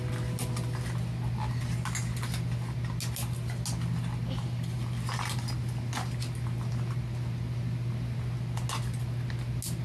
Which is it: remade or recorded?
recorded